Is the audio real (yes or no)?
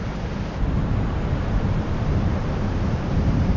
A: no